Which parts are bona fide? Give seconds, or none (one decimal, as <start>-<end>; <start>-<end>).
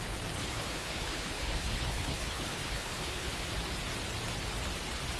0.0-0.4; 3.5-5.2